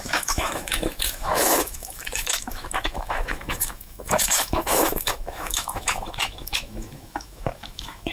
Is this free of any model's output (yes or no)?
no